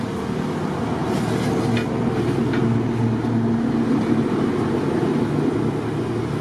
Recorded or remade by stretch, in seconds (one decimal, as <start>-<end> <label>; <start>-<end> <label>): 0.0-6.4 recorded